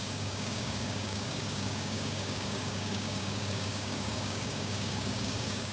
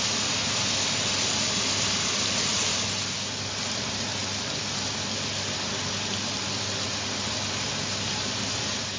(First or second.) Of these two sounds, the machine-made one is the first